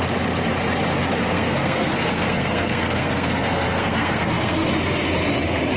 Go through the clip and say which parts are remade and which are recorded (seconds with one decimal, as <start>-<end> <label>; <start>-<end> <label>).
0.0-1.2 recorded; 1.2-4.7 remade; 4.7-5.8 recorded